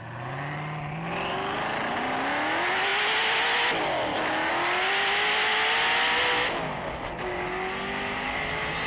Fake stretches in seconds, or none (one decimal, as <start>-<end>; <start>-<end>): none

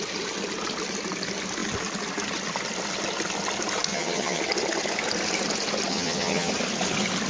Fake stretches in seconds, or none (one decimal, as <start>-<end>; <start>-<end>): 3.9-4.4; 5.9-6.5